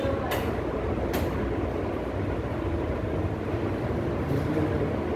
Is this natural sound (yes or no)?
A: yes